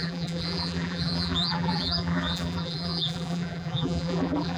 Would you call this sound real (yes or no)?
no